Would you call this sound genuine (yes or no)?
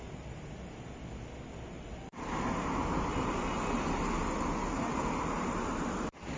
yes